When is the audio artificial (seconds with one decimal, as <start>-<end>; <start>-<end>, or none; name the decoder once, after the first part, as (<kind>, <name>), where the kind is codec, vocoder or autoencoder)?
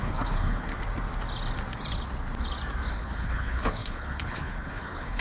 0.0-0.7 (codec, HILCodec); 2.9-5.2